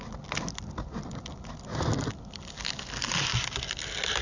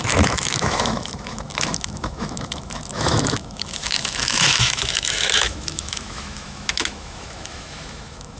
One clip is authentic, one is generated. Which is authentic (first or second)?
first